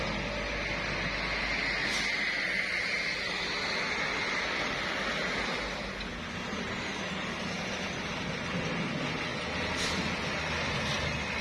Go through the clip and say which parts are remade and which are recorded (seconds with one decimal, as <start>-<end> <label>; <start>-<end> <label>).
0.0-11.4 recorded